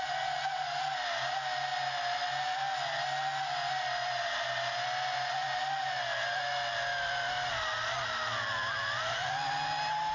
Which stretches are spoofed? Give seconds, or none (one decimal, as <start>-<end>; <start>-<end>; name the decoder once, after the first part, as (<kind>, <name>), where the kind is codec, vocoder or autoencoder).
8.6-9.3 (vocoder, BigVGAN v2)